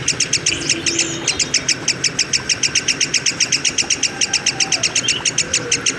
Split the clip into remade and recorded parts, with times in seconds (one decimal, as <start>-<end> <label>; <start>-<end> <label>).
0.0-6.0 recorded